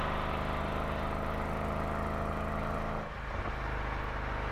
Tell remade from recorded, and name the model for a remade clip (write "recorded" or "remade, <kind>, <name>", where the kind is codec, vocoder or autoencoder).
recorded